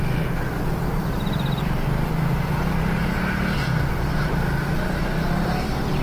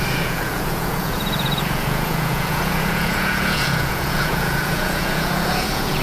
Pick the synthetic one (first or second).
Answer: second